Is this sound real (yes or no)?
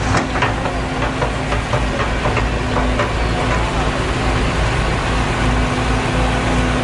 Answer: yes